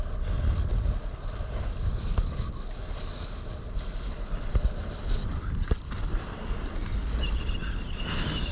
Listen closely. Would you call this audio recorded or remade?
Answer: recorded